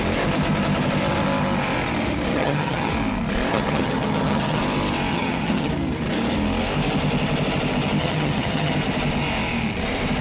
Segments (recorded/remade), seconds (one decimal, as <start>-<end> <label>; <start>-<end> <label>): 0.0-2.3 recorded; 2.3-2.9 remade; 2.9-3.5 recorded; 3.5-4.6 remade; 4.6-5.1 recorded; 5.1-5.7 remade; 5.7-8.0 recorded; 8.0-8.7 remade; 8.7-10.2 recorded